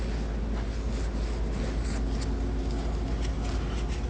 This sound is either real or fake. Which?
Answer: real